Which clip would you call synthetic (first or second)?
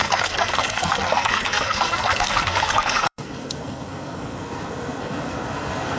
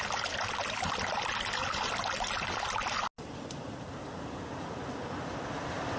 first